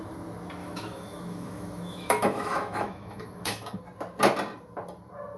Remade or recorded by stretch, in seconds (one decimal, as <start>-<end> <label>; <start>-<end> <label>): 0.0-0.6 recorded; 0.6-3.8 remade; 3.8-5.4 recorded